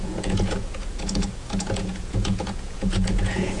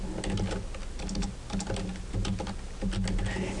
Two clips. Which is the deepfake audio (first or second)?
first